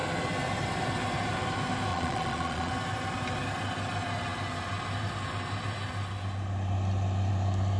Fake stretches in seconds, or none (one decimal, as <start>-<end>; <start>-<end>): 1.9-2.7